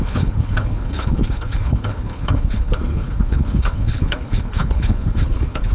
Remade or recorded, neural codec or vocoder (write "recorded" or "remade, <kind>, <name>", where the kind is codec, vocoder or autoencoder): remade, codec, HILCodec